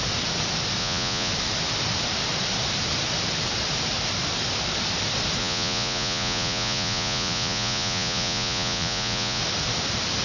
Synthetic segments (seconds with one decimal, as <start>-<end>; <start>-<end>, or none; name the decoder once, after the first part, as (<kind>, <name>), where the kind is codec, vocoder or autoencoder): 0.8-1.3 (vocoder, Vocos); 5.4-9.4